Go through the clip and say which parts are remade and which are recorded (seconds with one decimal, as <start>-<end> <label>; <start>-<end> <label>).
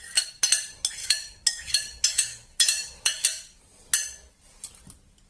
0.0-1.0 recorded; 1.0-3.6 remade; 3.6-5.3 recorded